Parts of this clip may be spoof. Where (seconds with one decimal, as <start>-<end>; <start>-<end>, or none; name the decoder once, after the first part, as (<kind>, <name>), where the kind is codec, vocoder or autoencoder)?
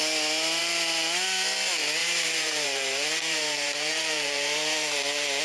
2.0-5.4 (vocoder, BigVGAN v2)